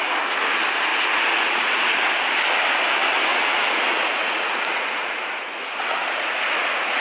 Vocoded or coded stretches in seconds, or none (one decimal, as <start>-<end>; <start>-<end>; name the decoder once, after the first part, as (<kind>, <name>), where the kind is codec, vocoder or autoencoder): 0.9-2.1 (vocoder, Vocos); 3.3-7.0